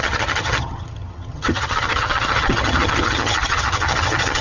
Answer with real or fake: fake